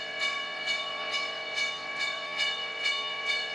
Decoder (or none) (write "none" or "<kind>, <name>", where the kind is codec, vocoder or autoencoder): vocoder, WaveNeXt